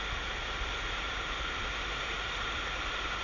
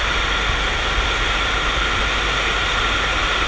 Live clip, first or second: second